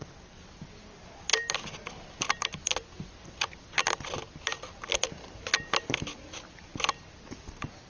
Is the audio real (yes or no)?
yes